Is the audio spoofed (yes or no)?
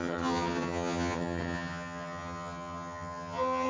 yes